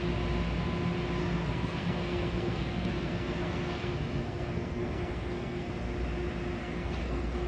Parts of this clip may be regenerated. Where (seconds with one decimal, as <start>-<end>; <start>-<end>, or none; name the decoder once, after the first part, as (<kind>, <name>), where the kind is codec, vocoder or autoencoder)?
1.2-5.7 (codec, SNAC); 6.6-7.5